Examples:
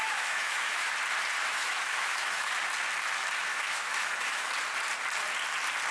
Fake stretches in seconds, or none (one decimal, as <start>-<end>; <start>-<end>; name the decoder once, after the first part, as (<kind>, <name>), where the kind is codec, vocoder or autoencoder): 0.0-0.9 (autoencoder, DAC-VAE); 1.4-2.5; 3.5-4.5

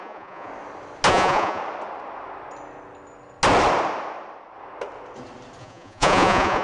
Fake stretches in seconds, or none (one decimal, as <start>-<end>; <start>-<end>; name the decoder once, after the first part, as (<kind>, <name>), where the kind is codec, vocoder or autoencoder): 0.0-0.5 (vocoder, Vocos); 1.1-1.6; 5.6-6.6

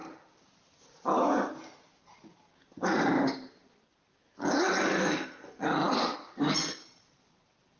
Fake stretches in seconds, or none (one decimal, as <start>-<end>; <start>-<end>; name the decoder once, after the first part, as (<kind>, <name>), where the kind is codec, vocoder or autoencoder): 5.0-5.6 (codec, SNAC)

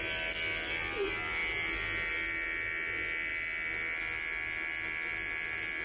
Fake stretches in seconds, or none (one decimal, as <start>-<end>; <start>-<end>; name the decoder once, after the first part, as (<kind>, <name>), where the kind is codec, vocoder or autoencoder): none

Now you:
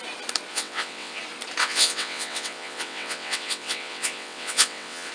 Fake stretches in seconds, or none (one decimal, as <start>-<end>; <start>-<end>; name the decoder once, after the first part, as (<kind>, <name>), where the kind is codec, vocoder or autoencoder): 0.5-1.2 (vocoder, WaveNeXt); 1.6-5.1

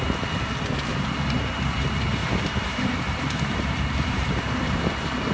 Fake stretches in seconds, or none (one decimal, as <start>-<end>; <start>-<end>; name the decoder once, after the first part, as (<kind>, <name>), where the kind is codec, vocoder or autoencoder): 0.9-1.8 (vocoder, BigVGAN v2); 2.2-4.8